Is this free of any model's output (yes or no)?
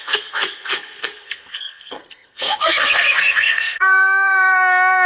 no